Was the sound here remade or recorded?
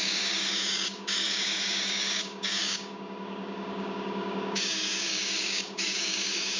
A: remade